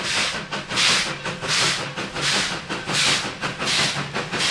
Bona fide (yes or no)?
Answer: yes